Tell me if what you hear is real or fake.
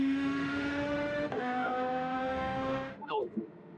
fake